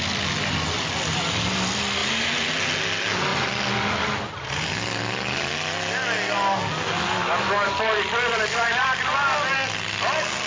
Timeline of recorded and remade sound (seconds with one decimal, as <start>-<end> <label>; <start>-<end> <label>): 0.0-10.5 recorded

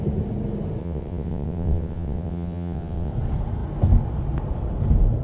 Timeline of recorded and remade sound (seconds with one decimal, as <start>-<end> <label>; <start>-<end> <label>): 0.0-0.8 recorded; 0.8-3.1 remade; 3.1-5.2 recorded

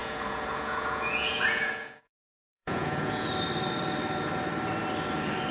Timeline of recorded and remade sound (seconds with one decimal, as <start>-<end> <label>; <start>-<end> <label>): 0.0-3.3 remade; 3.3-5.5 recorded

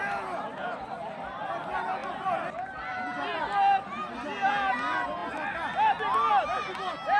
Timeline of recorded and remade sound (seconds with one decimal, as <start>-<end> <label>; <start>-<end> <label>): 0.0-7.2 recorded

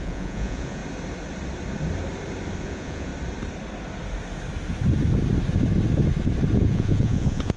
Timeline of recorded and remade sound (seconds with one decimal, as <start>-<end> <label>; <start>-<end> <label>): 0.0-0.8 remade; 0.8-2.6 recorded; 2.6-3.1 remade; 3.1-6.7 recorded; 6.7-7.6 remade

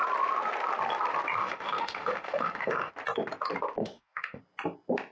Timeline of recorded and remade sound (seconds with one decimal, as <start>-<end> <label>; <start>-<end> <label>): 0.0-1.4 recorded; 1.4-2.9 remade; 2.9-3.8 recorded; 3.8-4.4 remade; 4.4-5.1 recorded

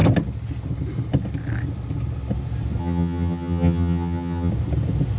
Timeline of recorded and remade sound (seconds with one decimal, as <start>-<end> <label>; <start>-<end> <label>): 0.0-2.8 recorded; 2.8-4.5 remade; 4.5-5.2 recorded

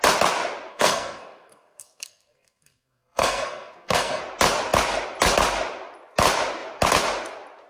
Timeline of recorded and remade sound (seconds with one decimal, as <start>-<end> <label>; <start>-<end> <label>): 0.0-0.7 recorded; 0.7-4.2 remade; 4.2-7.7 recorded